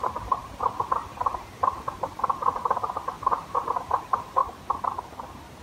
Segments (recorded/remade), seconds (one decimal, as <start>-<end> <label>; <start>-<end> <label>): 0.0-5.6 remade